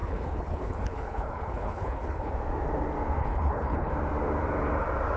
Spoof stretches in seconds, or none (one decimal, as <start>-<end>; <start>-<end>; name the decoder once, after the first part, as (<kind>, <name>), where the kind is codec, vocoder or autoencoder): 0.0-2.3 (codec, HILCodec); 3.2-3.9

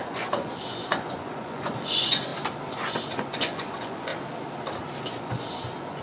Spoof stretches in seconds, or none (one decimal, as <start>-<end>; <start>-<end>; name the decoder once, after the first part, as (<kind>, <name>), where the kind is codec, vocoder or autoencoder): 0.0-2.3 (vocoder, Vocos); 2.8-4.1; 5.0-6.0